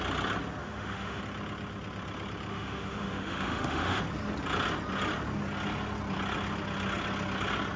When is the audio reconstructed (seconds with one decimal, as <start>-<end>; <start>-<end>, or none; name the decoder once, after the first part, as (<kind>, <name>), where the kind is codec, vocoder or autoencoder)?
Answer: 0.6-1.2 (autoencoder, DAC-VAE); 2.5-4.0